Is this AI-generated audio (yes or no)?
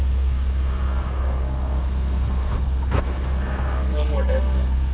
yes